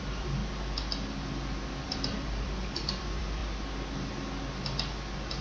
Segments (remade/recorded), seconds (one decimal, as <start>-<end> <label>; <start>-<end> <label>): 0.0-0.4 remade; 0.4-1.8 recorded; 1.8-3.4 remade; 3.4-5.4 recorded